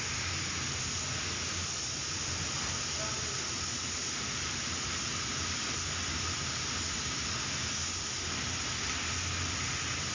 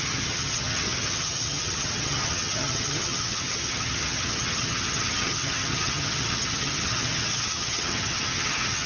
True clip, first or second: first